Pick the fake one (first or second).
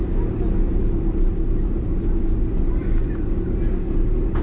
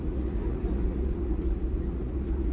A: second